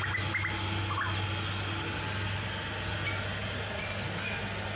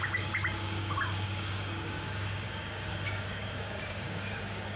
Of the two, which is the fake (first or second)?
second